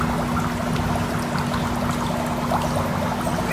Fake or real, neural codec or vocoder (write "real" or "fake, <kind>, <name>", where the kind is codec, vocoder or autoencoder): real